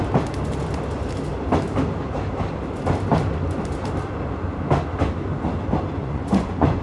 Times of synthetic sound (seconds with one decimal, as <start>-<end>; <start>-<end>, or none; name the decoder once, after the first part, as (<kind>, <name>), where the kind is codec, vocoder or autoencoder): 6.0-6.8 (vocoder, Vocos)